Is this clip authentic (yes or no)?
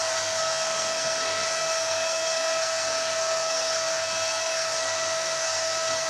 no